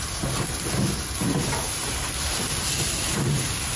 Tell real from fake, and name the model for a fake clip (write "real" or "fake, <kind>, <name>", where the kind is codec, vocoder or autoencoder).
real